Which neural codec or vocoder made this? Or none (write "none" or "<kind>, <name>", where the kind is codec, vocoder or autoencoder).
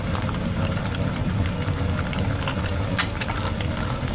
none